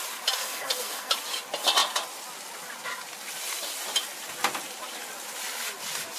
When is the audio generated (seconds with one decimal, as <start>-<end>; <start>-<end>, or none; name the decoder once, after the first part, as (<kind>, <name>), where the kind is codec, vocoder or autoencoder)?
0.4-1.1 (codec, SNAC)